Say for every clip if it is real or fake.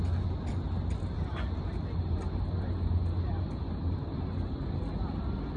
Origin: real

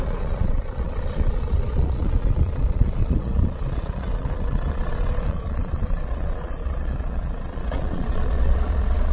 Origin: fake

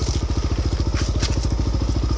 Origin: real